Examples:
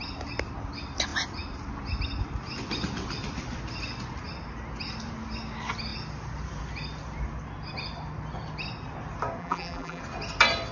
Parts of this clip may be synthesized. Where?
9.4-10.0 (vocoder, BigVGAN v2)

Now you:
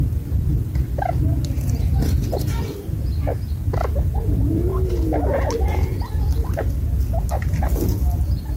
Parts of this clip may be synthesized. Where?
0.0-3.6 (vocoder, BigVGAN v2); 4.2-4.7; 5.6-8.6

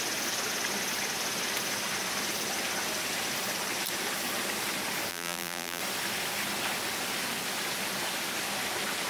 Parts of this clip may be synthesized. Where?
5.1-5.8 (vocoder, BigVGAN v2)

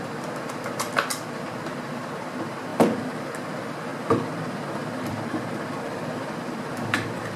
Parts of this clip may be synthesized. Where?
2.7-3.2 (vocoder, BigVGAN v2); 3.9-7.4

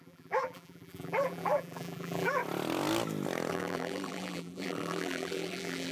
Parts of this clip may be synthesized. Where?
0.0-2.4 (vocoder, BigVGAN v2); 3.5-5.9